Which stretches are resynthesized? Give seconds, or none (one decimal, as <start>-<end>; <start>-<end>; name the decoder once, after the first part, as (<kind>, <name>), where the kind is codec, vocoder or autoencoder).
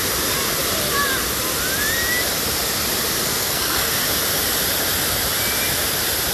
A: 3.2-3.9 (codec, SNAC)